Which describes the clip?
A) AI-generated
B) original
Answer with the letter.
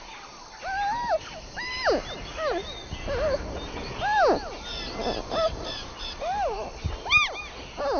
B